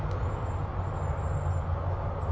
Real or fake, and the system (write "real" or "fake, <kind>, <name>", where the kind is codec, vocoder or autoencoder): real